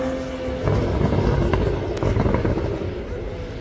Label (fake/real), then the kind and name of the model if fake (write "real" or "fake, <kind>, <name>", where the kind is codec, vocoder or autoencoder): real